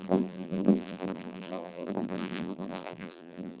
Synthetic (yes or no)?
yes